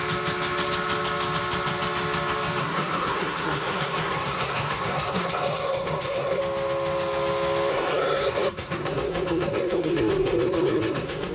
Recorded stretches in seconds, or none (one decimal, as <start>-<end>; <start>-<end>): 0.0-2.6; 6.4-7.7